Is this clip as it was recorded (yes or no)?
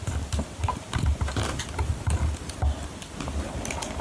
yes